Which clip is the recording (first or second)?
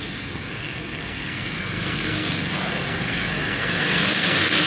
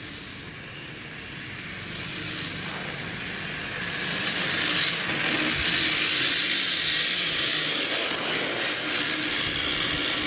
second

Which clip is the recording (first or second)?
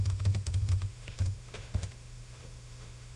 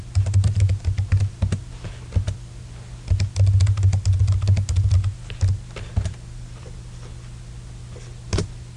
second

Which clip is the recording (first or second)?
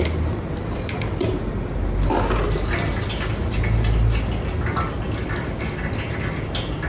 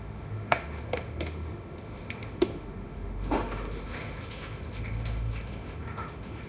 first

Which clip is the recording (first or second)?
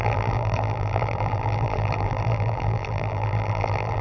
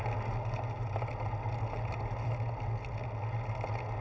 second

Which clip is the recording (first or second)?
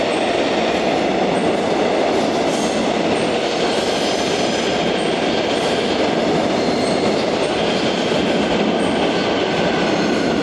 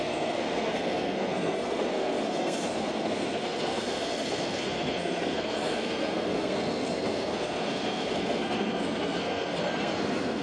first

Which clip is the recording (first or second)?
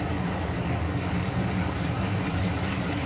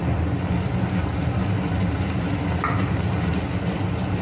second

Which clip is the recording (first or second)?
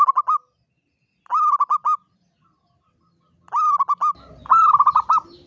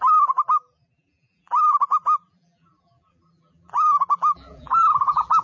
first